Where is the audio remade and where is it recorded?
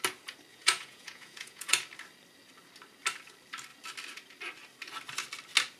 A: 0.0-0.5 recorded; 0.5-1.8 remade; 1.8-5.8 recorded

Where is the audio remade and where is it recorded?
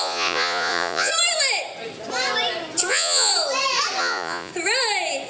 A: 0.0-1.1 remade; 1.1-2.9 recorded; 2.9-3.3 remade; 3.3-4.0 recorded; 4.0-4.5 remade; 4.5-5.3 recorded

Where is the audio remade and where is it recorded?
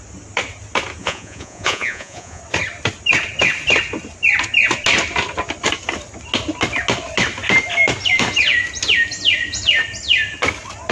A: 0.0-1.0 recorded; 1.0-2.4 remade; 2.4-10.9 recorded